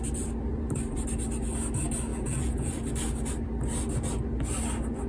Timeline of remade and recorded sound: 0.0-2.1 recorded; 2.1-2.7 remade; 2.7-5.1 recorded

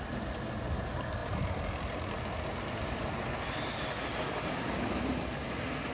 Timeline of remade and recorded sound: 0.0-5.9 recorded

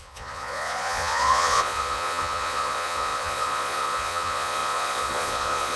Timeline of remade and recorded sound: 0.0-5.8 remade

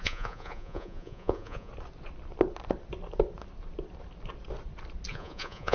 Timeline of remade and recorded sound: 0.0-1.7 remade; 1.7-5.1 recorded; 5.1-5.7 remade

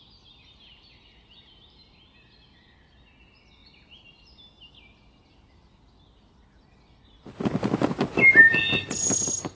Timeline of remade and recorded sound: 0.0-9.6 recorded

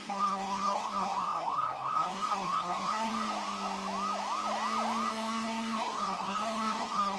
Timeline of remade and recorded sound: 0.0-3.1 remade; 3.1-5.1 recorded; 5.1-7.2 remade